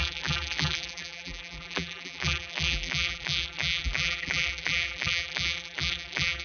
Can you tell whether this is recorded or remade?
remade